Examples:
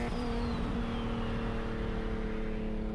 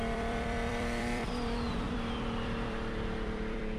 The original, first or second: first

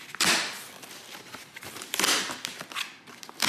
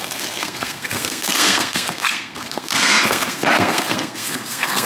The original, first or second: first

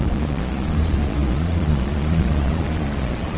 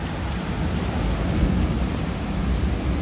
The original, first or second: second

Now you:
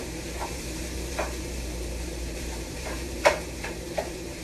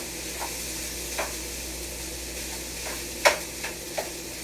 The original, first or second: second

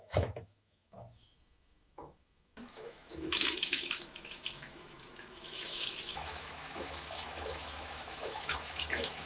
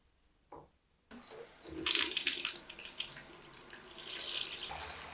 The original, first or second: second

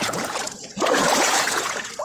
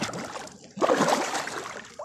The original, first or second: second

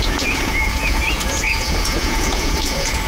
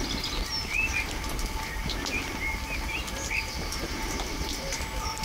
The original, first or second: second